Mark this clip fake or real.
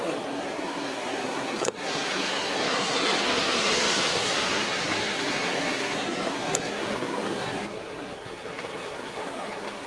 fake